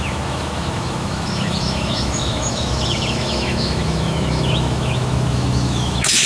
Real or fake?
fake